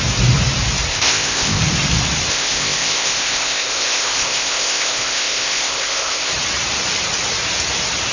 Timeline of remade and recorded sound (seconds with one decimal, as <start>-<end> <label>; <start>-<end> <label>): 0.0-0.9 recorded; 0.9-1.6 remade; 1.6-2.3 recorded; 2.3-6.3 remade; 6.3-8.1 recorded